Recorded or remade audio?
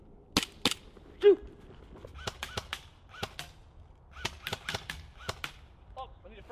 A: recorded